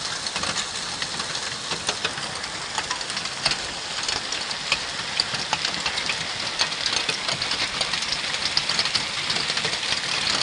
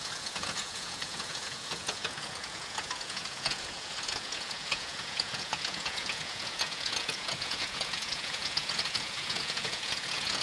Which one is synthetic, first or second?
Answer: second